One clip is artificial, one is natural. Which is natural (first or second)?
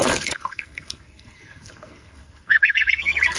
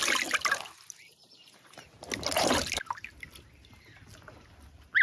second